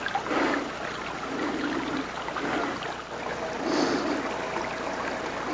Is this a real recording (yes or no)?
yes